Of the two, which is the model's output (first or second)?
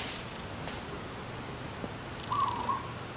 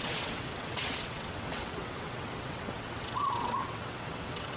second